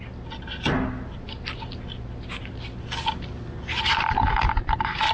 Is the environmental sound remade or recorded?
recorded